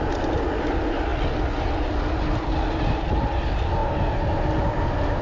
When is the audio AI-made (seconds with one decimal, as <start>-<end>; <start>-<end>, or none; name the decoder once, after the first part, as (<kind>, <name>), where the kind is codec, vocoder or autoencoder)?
none